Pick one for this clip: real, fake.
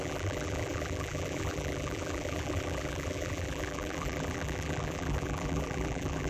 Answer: fake